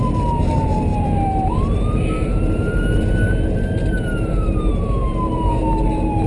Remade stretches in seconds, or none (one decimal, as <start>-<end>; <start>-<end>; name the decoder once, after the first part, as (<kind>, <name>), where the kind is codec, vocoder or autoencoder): 0.0-6.3 (vocoder, BigVGAN v2)